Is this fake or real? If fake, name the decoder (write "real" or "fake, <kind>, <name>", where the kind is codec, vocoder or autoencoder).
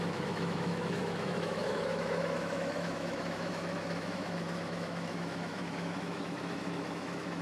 fake, autoencoder, DAC-VAE